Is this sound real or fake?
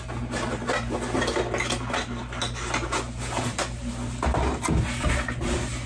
real